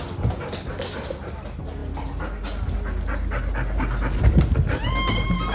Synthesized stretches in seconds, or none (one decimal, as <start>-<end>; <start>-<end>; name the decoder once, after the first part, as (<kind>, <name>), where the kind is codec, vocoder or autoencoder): none